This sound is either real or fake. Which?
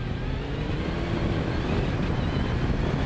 real